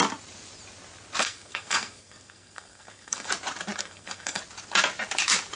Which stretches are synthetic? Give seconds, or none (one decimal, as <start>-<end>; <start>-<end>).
1.2-3.3; 3.8-4.4